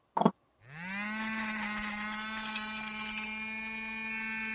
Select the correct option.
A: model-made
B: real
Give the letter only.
B